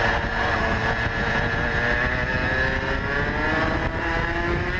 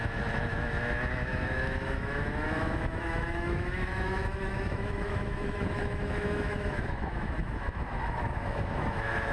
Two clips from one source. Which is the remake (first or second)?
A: second